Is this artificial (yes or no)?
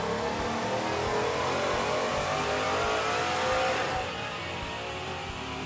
no